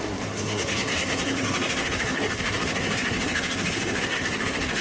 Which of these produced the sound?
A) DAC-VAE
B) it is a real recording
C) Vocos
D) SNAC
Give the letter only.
D